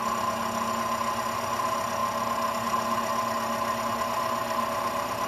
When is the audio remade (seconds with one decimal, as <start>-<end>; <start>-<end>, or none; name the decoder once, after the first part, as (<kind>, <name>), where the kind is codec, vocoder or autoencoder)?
none